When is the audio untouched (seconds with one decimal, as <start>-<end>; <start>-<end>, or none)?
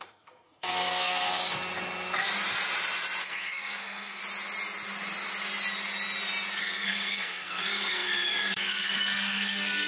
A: 1.4-3.2; 4.2-6.6